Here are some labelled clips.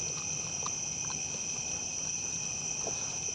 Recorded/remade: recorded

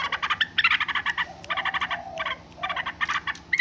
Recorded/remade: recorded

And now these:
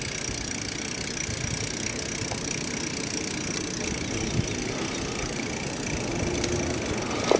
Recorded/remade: recorded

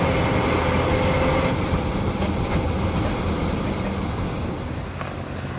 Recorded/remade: recorded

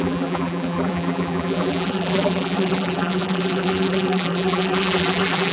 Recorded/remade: remade